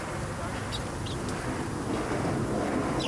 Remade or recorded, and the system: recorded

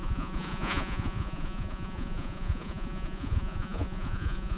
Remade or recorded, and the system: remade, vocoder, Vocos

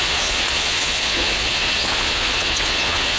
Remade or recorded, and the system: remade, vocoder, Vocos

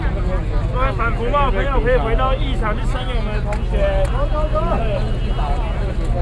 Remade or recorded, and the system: recorded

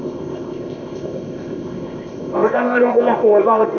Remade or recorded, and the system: remade, codec, ZipCodec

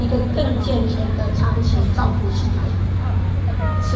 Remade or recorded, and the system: recorded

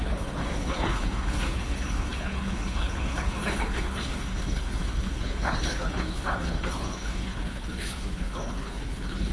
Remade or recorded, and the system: remade, codec, HILCodec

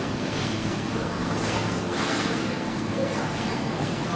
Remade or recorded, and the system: remade, codec, SNAC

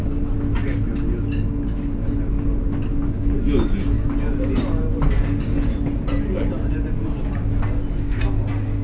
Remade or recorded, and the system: recorded